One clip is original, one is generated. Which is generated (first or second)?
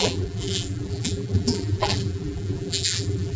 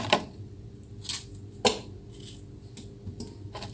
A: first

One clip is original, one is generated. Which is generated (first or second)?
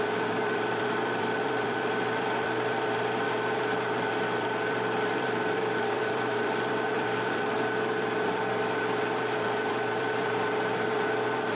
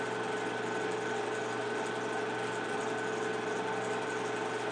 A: first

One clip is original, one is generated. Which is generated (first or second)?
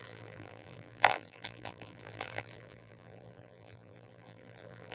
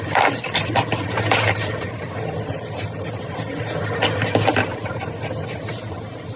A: first